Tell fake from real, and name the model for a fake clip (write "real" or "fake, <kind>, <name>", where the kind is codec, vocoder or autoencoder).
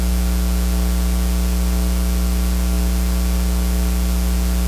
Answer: real